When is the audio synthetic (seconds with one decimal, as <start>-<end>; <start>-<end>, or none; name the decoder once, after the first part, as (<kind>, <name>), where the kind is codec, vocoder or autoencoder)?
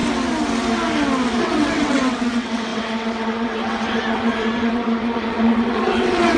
1.4-6.4 (vocoder, WaveNeXt)